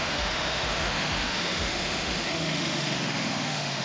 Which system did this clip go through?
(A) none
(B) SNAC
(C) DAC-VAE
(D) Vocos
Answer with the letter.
C